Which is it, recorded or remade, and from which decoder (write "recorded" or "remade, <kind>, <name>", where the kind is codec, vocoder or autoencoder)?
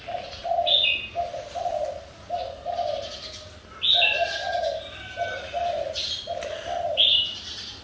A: recorded